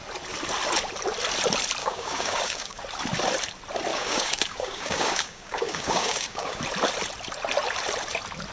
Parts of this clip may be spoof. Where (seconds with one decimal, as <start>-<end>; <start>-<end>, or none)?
1.8-2.8; 3.9-6.6